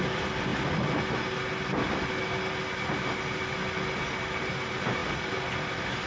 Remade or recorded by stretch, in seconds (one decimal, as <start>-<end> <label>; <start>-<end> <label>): 0.0-6.1 recorded

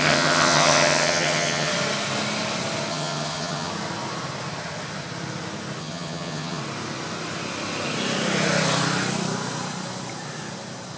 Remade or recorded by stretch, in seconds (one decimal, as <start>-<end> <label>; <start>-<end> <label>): 0.0-1.7 remade; 1.7-2.9 recorded; 2.9-3.7 remade; 3.7-5.8 recorded; 5.8-6.6 remade; 6.6-11.0 recorded

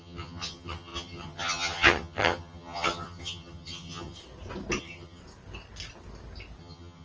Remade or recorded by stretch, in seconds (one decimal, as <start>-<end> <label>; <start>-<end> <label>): 0.0-4.2 remade; 4.2-4.8 recorded; 4.8-5.2 remade; 5.2-6.6 recorded; 6.6-7.0 remade